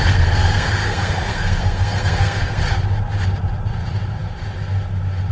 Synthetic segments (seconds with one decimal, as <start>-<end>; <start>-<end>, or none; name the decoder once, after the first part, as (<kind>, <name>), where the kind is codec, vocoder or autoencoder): 0.0-2.6 (codec, SNAC)